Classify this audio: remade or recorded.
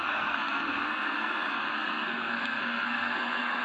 remade